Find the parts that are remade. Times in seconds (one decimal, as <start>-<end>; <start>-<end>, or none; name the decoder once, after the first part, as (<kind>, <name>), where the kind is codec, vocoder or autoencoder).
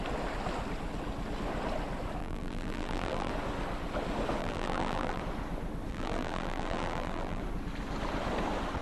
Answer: 2.2-3.3 (vocoder, BigVGAN v2); 4.4-5.2; 5.9-7.4